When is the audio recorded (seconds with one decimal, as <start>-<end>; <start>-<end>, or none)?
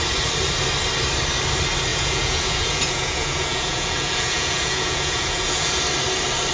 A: 0.0-1.9; 5.8-6.5